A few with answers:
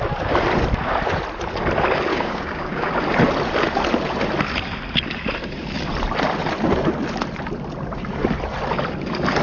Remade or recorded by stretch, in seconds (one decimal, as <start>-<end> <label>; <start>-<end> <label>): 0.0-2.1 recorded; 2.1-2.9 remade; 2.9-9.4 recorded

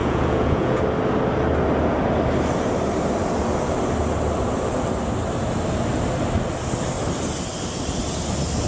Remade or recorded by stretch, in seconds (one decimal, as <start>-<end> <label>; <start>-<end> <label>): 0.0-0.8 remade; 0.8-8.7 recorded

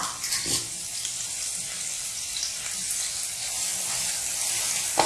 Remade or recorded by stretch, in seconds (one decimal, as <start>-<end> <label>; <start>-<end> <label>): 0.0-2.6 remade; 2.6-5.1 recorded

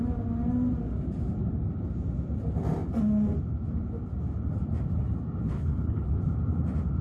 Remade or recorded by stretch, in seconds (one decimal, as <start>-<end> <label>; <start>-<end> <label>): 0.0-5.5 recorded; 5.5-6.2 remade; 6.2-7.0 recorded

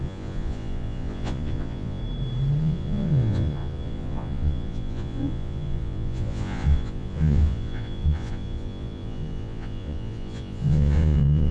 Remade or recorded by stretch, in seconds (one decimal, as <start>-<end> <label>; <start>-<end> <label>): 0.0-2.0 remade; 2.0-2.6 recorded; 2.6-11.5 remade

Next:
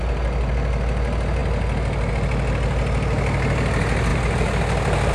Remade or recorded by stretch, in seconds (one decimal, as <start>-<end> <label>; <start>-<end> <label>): 0.0-5.1 recorded